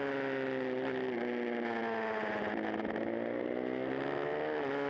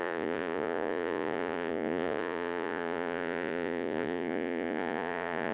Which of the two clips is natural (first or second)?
first